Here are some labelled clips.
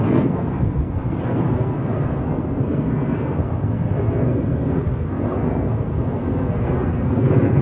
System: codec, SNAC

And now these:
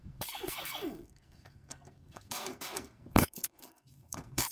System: codec, SNAC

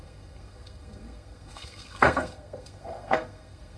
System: codec, SNAC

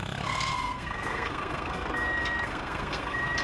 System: codec, SNAC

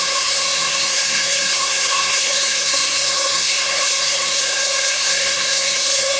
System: codec, SNAC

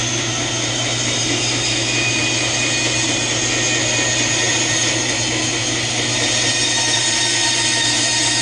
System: none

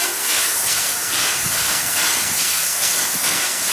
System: codec, SNAC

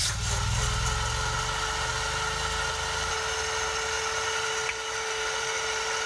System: none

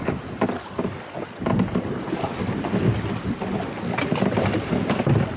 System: none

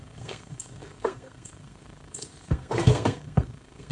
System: codec, SNAC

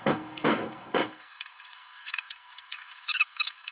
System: codec, SNAC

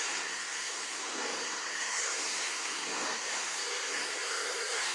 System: codec, SNAC